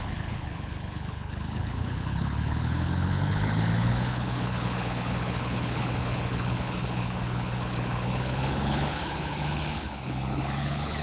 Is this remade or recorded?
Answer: remade